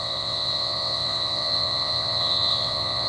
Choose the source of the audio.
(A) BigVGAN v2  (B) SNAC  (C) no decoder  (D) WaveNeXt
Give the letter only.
D